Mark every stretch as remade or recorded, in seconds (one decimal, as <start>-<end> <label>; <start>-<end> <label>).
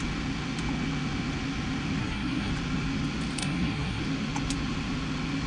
0.0-2.0 recorded; 2.0-2.5 remade; 2.5-3.4 recorded; 3.4-4.0 remade; 4.0-5.5 recorded